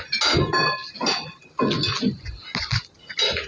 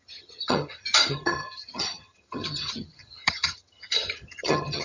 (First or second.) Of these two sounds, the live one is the first